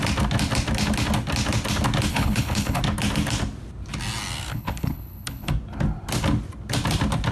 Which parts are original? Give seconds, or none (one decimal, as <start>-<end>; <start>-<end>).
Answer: 0.0-2.1; 2.8-4.5; 5.5-7.3